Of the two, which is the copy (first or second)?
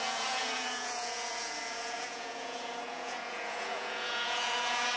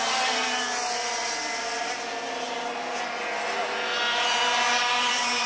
first